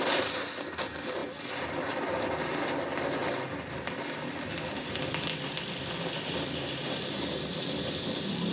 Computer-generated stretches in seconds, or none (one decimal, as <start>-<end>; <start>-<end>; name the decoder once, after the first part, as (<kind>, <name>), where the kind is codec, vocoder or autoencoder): none